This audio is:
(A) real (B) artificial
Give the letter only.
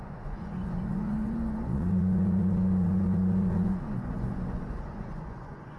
B